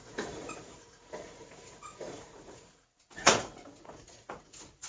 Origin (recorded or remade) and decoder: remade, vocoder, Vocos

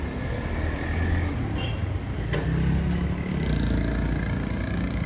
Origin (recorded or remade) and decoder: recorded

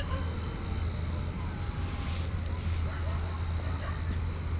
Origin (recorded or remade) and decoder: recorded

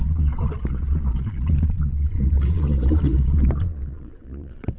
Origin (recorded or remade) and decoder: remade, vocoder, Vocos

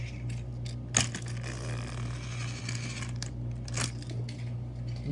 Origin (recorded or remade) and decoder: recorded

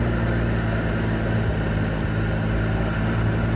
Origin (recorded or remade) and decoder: recorded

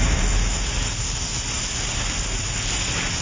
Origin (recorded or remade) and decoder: recorded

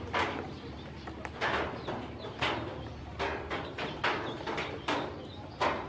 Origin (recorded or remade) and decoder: recorded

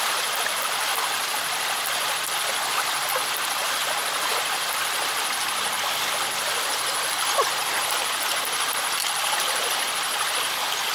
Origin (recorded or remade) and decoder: recorded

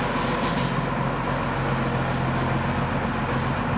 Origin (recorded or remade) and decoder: recorded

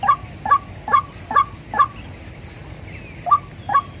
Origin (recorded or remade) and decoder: recorded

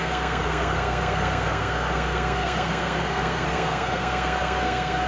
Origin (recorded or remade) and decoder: remade, codec, SNAC